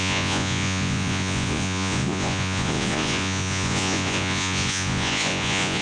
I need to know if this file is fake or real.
fake